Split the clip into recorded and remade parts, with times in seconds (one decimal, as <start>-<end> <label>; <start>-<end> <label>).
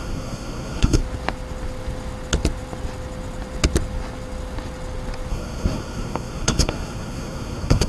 0.0-1.0 remade; 1.0-5.3 recorded; 5.3-7.9 remade